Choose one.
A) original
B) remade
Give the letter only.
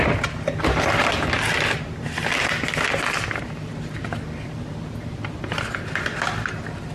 B